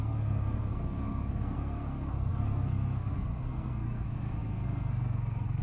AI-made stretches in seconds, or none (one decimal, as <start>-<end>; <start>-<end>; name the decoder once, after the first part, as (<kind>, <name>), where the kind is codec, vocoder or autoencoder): 0.0-5.6 (codec, SNAC)